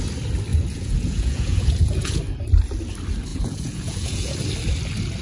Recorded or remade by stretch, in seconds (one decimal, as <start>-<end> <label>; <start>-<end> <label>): 0.0-0.5 recorded; 0.5-2.2 remade; 2.2-3.3 recorded; 3.3-4.3 remade; 4.3-5.2 recorded